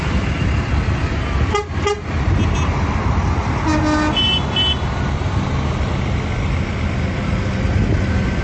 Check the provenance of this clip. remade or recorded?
recorded